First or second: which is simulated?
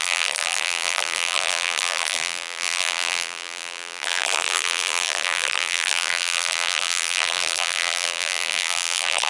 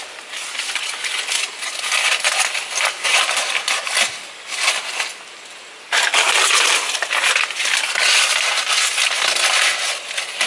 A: first